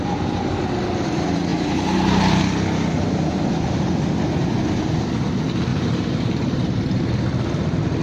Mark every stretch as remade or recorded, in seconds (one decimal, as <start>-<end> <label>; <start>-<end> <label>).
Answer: 0.0-1.5 recorded; 1.5-2.4 remade; 2.4-5.7 recorded; 5.7-7.0 remade; 7.0-8.0 recorded